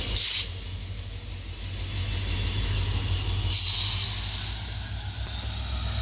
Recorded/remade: recorded